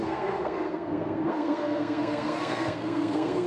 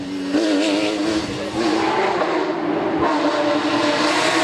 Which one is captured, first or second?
second